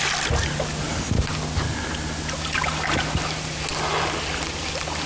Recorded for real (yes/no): yes